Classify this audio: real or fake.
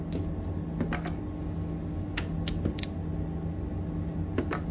real